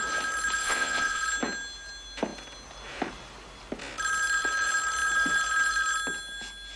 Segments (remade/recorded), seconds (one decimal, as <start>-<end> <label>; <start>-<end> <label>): 0.0-0.6 recorded; 0.6-1.2 remade; 1.2-6.8 recorded